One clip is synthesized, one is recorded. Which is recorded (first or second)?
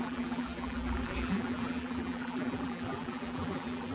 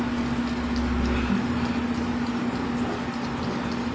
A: second